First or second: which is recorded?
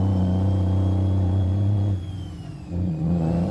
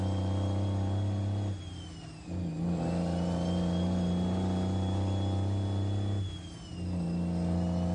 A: second